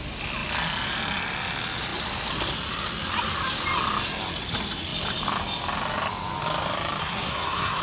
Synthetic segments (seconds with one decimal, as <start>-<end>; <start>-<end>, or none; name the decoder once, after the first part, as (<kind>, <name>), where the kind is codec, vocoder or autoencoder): 7.0-7.8 (codec, SNAC)

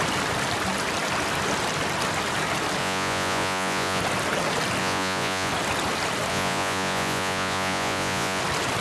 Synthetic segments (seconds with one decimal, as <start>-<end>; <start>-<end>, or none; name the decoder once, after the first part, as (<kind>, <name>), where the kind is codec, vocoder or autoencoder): 2.8-4.0 (vocoder, Vocos); 4.8-5.5; 6.3-8.4

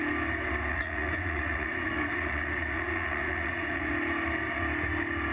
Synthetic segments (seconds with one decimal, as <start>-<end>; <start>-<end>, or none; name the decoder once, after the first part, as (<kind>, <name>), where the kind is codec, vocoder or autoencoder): 0.7-3.9 (vocoder, Vocos)

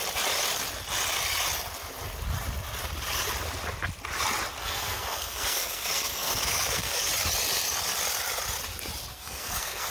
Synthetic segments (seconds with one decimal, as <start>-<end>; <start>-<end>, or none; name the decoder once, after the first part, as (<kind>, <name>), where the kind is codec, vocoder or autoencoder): 4.6-7.1 (codec, SNAC); 9.1-9.9

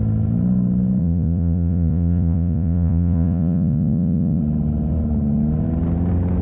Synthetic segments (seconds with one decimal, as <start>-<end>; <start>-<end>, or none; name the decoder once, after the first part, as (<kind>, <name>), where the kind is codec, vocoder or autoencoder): 1.0-4.4 (vocoder, Vocos)

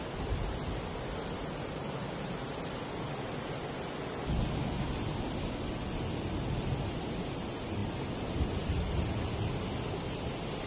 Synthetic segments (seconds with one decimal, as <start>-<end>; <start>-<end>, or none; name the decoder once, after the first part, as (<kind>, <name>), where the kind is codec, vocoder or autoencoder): none